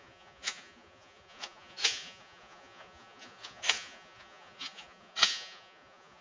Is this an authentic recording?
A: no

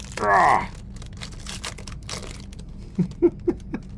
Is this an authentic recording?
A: yes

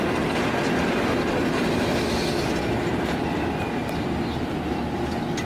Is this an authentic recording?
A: yes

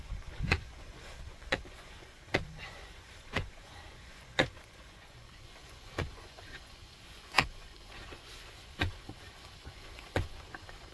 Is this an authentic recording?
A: no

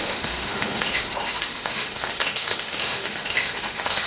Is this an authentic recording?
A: no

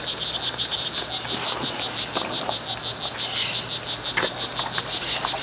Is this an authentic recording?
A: yes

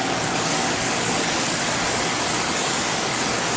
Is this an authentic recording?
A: no